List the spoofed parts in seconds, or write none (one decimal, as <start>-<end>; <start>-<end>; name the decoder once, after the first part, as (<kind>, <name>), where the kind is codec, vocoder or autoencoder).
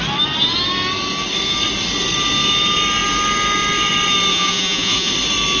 4.3-5.1 (vocoder, Vocos)